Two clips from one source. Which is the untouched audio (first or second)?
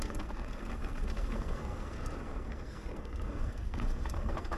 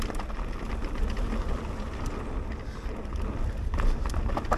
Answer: second